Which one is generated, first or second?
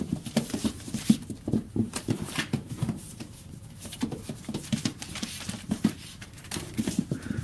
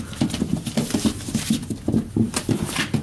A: first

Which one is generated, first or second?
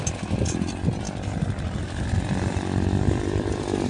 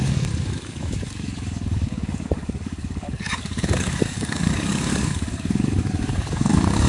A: second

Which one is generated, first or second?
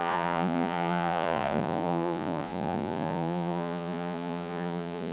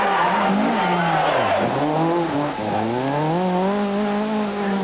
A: first